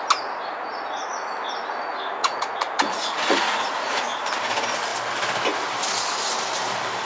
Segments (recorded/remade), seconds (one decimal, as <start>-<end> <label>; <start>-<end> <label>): 0.0-0.5 recorded; 0.5-1.1 remade; 1.1-2.2 recorded; 2.2-4.0 remade; 4.0-7.1 recorded